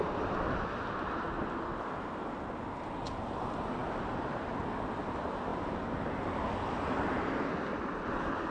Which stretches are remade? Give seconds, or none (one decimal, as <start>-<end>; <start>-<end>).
none